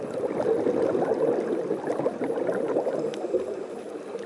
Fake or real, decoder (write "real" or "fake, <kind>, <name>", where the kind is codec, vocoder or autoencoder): real